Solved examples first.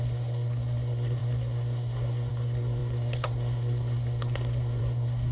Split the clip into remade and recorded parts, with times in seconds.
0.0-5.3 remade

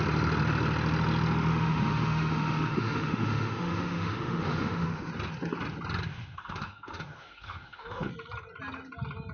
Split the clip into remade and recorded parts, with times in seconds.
0.0-1.5 recorded; 1.5-5.1 remade; 5.1-6.1 recorded; 6.1-8.1 remade; 8.1-9.3 recorded

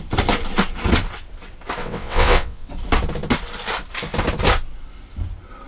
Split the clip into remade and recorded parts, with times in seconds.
0.0-1.8 recorded; 1.8-2.7 remade; 2.7-5.7 recorded

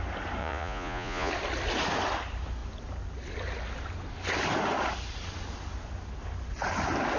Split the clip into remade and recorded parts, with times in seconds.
0.0-0.4 recorded; 0.4-1.3 remade; 1.3-7.2 recorded

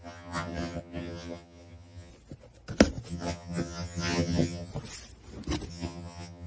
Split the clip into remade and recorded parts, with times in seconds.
0.0-2.1 remade; 2.1-3.1 recorded; 3.1-4.7 remade; 4.7-5.7 recorded; 5.7-6.5 remade

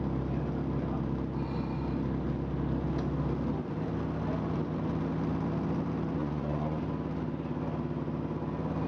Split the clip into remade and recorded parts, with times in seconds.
0.0-6.2 recorded; 6.2-6.8 remade; 6.8-8.9 recorded

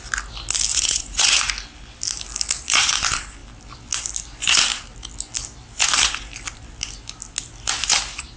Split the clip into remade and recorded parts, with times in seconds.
0.0-0.7 recorded; 0.7-1.4 remade; 1.4-8.4 recorded

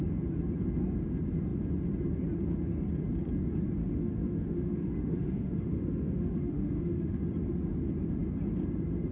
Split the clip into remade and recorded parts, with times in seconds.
0.0-3.8 recorded; 3.8-7.2 remade; 7.2-9.1 recorded